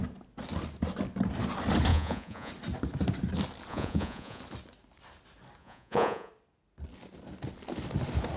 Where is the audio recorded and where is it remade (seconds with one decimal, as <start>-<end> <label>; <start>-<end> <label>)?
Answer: 0.0-1.9 recorded; 1.9-2.5 remade; 2.5-3.7 recorded; 3.7-4.4 remade; 4.4-5.6 recorded; 5.6-6.3 remade; 6.3-8.4 recorded